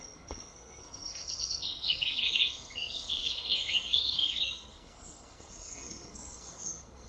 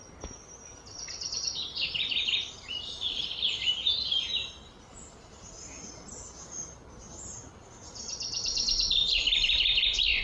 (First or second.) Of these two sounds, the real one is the second